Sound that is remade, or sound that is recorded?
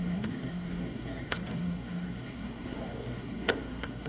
remade